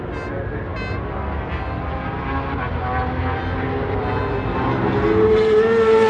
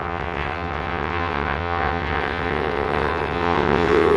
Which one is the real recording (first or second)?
first